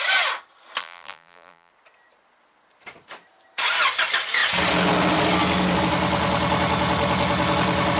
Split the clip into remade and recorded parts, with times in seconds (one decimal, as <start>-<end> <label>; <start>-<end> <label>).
0.0-0.8 recorded; 0.8-1.7 remade; 1.7-8.0 recorded